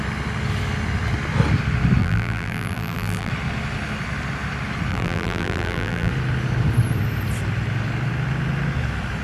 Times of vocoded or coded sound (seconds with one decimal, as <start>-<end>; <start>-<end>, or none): 2.0-3.3; 4.9-6.1

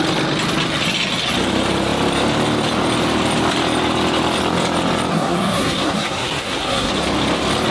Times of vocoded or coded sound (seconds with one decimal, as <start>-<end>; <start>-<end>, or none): 5.1-6.9

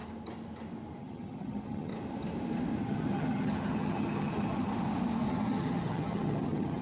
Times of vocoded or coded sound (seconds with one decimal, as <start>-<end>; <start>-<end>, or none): 1.0-1.9; 2.8-4.7; 5.3-6.8

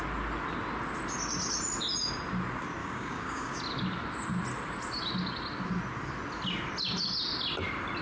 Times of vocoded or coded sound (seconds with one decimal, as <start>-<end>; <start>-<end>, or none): 2.8-3.6

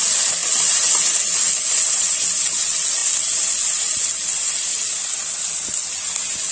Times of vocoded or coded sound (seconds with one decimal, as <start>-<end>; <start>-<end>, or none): none